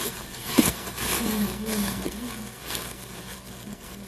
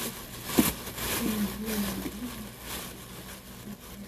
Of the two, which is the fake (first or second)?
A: first